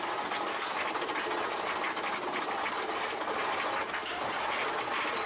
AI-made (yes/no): no